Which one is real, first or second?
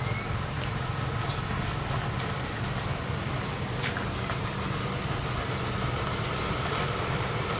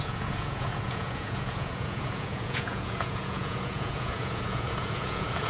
first